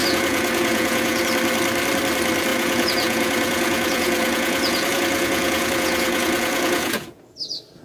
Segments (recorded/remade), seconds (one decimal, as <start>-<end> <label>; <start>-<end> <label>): 0.0-1.2 remade; 1.2-2.5 recorded; 2.5-7.2 remade; 7.2-7.8 recorded